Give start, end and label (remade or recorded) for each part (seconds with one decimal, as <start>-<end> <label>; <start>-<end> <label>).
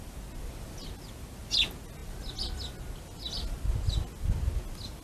0.0-5.0 recorded